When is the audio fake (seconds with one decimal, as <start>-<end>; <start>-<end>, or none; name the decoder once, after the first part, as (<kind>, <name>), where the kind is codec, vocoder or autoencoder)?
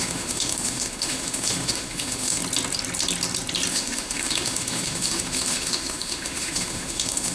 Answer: 0.0-2.4 (autoencoder, DAC-VAE); 3.7-7.3